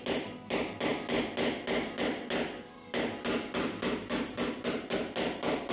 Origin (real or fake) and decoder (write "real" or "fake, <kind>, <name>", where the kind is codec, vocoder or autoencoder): real